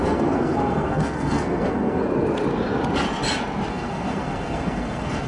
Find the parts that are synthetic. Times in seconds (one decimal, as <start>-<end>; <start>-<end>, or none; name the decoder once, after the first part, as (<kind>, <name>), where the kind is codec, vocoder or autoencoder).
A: 0.0-2.0 (codec, SNAC); 3.7-5.3